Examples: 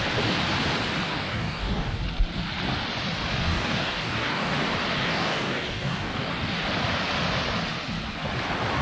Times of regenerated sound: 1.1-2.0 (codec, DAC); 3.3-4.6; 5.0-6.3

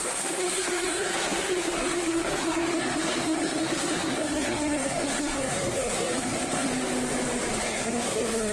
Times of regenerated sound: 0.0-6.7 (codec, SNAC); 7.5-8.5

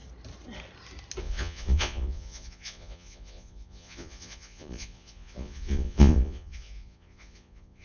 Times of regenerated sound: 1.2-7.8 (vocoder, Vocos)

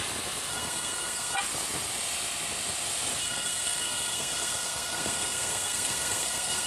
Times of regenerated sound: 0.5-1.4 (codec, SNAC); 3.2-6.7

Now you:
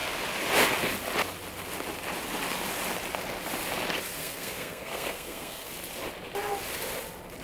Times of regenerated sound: 4.2-5.7 (codec, SNAC)

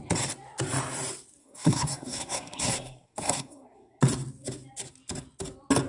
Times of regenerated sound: 1.4-4.0 (codec, SNAC)

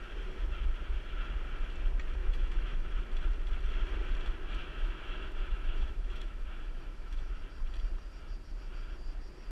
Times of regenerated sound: 2.2-3.0 (autoencoder, DAC-VAE); 4.6-7.3